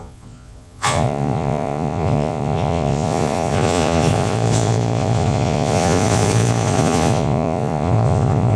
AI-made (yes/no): yes